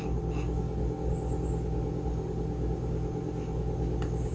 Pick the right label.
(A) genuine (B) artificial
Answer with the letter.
A